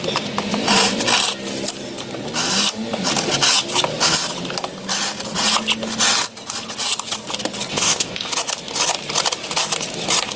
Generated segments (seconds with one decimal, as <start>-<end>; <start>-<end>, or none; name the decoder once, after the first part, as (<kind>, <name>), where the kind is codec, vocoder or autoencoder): 7.7-8.3 (codec, ZipCodec)